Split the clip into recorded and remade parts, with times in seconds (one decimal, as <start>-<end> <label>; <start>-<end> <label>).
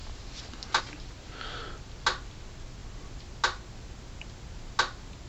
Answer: 0.0-5.3 recorded